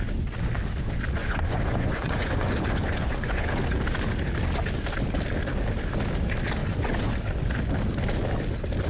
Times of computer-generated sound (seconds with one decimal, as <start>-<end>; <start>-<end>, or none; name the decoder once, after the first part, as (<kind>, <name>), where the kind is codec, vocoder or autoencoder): 1.2-3.5 (vocoder, Vocos); 6.6-7.1